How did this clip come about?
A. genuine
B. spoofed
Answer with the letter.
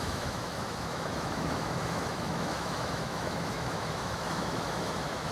B